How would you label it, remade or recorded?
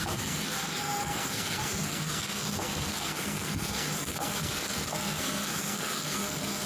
remade